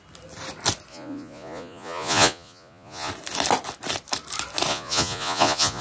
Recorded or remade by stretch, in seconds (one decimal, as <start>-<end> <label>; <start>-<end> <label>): 0.0-0.9 recorded; 0.9-3.1 remade; 3.1-4.7 recorded; 4.7-5.8 remade